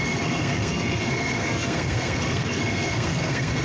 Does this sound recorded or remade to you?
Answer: remade